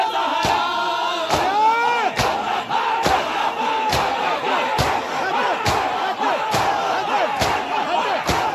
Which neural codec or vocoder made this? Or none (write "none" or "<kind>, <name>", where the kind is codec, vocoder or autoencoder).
none